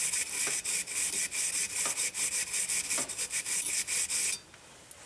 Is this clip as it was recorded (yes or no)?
yes